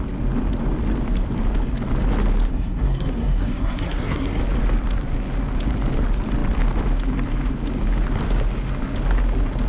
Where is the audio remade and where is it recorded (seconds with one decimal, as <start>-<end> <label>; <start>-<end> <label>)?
0.0-2.5 recorded; 2.5-4.4 remade; 4.4-9.7 recorded

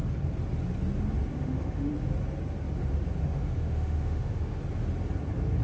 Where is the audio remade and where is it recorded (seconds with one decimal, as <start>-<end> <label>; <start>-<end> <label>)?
0.0-1.3 recorded; 1.3-1.9 remade; 1.9-3.2 recorded; 3.2-4.6 remade; 4.6-5.6 recorded

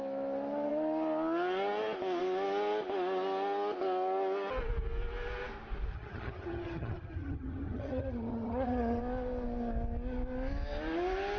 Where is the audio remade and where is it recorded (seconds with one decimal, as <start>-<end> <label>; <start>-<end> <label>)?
0.0-5.9 recorded; 5.9-9.0 remade; 9.0-11.4 recorded

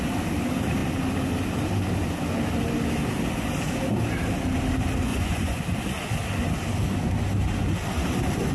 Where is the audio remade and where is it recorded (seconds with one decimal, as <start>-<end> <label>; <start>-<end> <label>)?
0.0-5.1 recorded; 5.1-5.6 remade; 5.6-8.5 recorded

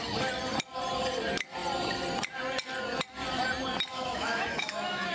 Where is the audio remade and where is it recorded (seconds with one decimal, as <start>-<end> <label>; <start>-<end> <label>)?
0.0-3.9 recorded; 3.9-5.1 remade

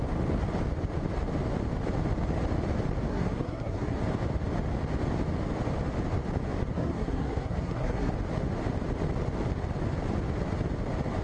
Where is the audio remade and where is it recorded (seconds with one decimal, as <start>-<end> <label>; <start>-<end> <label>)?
0.0-3.1 recorded; 3.1-4.0 remade; 4.0-6.7 recorded; 6.7-8.1 remade; 8.1-11.2 recorded